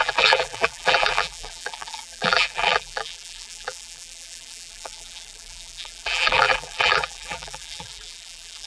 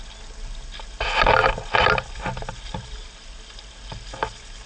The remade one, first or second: first